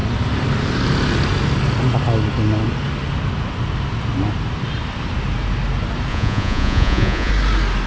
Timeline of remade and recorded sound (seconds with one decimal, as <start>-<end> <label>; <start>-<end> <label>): 0.0-6.1 recorded; 6.1-7.3 remade; 7.3-7.9 recorded